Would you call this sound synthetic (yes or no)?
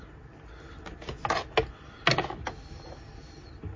no